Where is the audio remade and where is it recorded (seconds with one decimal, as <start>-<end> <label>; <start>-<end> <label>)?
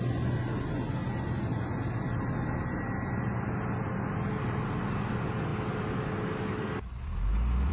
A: 0.0-7.7 recorded